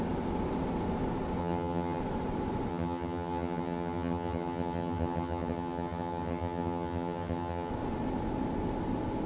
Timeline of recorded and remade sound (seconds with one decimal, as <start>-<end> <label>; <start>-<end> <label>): 0.0-1.4 recorded; 1.4-2.0 remade; 2.0-2.7 recorded; 2.7-7.7 remade; 7.7-9.3 recorded